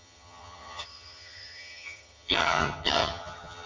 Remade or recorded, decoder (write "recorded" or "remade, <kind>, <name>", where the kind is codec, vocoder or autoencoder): remade, vocoder, HiFi-GAN